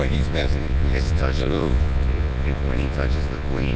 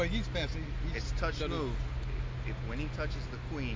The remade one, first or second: first